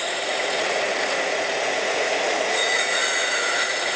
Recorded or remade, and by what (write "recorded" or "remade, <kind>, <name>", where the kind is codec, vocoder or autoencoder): remade, vocoder, Vocos